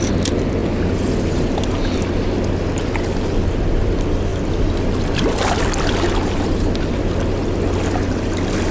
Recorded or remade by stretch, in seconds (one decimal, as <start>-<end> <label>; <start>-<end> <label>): 0.0-8.7 recorded